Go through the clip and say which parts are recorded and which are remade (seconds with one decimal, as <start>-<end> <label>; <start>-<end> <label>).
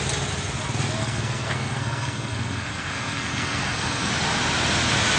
0.0-1.0 recorded; 1.0-4.1 remade; 4.1-5.2 recorded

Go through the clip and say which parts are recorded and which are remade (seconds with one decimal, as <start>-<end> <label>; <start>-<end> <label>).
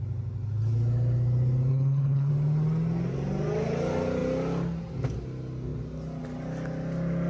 0.0-1.7 recorded; 1.7-2.3 remade; 2.3-7.3 recorded